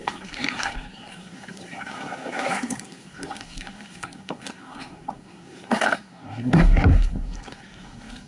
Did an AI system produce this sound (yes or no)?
yes